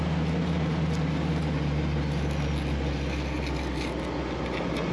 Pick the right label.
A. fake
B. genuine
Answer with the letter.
B